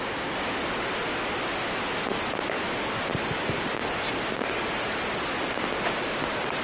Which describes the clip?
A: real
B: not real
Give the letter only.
A